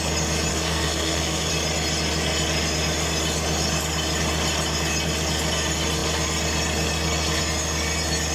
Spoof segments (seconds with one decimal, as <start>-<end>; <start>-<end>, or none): 0.5-1.5